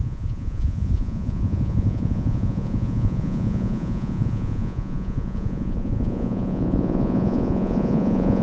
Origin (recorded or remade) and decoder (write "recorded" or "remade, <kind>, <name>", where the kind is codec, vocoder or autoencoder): remade, vocoder, Vocos